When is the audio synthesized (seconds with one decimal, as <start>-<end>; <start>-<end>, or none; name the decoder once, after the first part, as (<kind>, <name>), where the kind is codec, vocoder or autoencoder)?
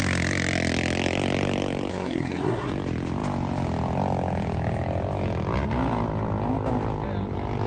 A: 1.9-2.7 (codec, SNAC)